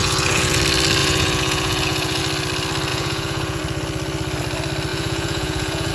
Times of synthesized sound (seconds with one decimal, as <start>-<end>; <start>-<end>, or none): 0.0-0.6; 1.0-2.2; 2.9-3.6; 4.9-5.9